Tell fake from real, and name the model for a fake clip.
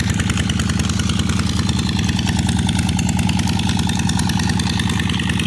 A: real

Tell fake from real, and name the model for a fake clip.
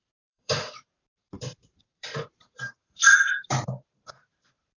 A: fake, vocoder, BigVGAN v2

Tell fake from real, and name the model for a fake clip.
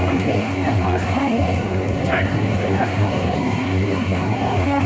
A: fake, codec, SNAC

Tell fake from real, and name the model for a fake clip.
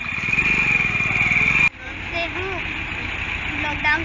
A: real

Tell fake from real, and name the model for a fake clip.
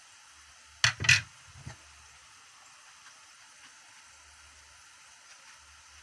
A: real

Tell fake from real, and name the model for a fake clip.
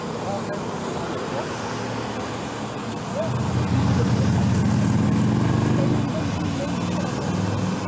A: real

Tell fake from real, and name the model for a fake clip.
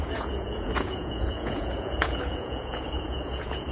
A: fake, vocoder, Vocos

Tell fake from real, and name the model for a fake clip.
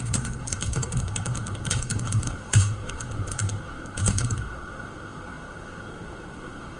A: fake, codec, SNAC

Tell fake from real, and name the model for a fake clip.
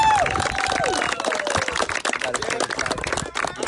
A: real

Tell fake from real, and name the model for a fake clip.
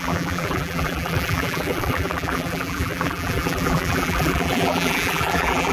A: fake, vocoder, BigVGAN v2